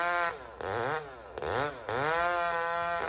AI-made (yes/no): no